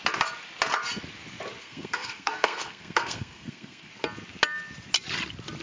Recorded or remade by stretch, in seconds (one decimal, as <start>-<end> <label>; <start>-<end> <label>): 0.0-1.6 recorded; 1.6-3.9 remade; 3.9-5.6 recorded